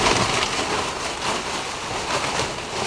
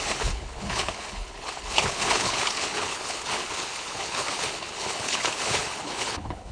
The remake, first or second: second